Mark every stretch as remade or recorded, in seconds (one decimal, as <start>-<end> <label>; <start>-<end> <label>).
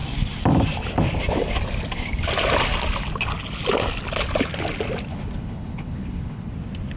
0.0-5.1 recorded; 5.1-6.5 remade; 6.5-7.0 recorded